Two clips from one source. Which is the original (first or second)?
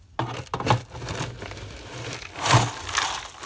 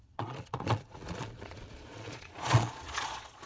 first